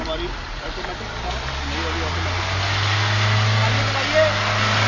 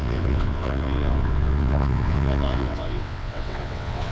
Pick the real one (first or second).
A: first